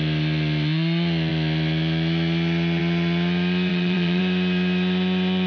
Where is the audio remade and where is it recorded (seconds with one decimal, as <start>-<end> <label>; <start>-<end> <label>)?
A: 0.0-3.7 recorded; 3.7-4.2 remade; 4.2-5.5 recorded